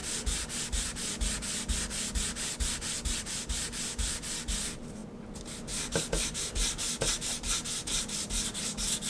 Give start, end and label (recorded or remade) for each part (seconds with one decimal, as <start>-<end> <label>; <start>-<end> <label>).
0.0-3.2 recorded; 3.2-5.0 remade; 5.0-9.1 recorded